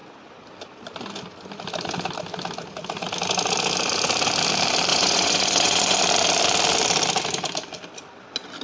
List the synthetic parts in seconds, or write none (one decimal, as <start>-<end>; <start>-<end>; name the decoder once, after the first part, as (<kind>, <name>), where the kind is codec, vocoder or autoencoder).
4.9-6.0 (vocoder, Vocos)